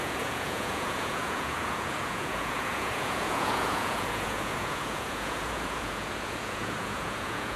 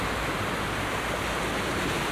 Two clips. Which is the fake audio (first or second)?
first